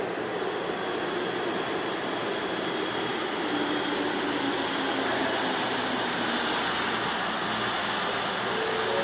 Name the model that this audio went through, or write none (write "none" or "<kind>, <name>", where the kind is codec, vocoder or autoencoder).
none